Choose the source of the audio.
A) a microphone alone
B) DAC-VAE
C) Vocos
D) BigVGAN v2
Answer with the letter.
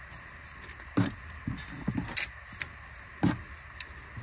A